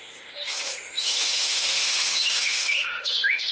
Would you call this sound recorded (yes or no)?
no